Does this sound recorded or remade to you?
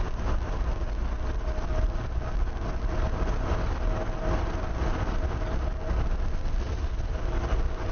recorded